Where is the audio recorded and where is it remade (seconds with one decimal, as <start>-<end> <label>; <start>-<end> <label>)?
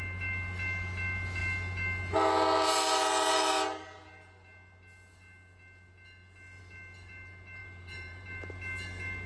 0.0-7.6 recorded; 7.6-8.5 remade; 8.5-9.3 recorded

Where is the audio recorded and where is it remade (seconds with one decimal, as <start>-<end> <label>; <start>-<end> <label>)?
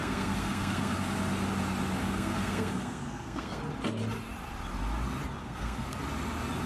0.0-1.0 remade; 1.0-2.0 recorded; 2.0-3.6 remade; 3.6-5.4 recorded; 5.4-6.0 remade; 6.0-6.7 recorded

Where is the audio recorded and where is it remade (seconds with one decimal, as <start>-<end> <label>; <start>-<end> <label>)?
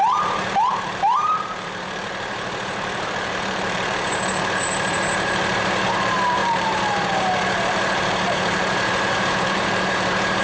0.0-10.4 remade